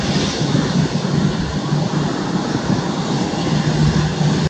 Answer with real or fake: real